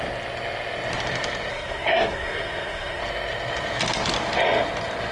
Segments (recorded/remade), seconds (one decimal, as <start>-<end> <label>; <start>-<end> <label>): 0.0-1.5 recorded; 1.5-3.0 remade; 3.0-5.1 recorded